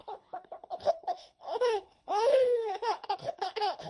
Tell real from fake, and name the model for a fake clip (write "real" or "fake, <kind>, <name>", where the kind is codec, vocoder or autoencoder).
fake, codec, HILCodec